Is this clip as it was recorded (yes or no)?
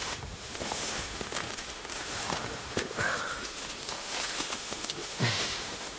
no